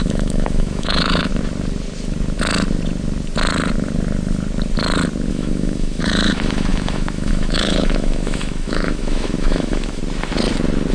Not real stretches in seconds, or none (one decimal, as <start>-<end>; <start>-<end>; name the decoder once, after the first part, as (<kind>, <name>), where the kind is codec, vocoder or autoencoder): 0.0-1.3 (autoencoder, DAC-VAE); 5.3-10.0